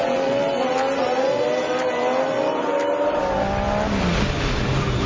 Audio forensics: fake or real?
real